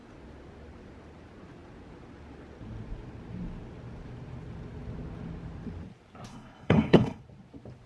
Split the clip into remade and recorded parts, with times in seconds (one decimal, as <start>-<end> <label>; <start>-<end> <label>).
0.0-6.3 recorded; 6.3-7.2 remade; 7.2-7.9 recorded